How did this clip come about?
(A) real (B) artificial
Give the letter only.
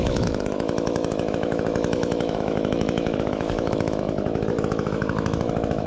B